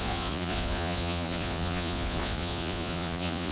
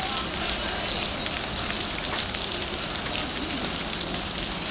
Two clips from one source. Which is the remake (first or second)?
first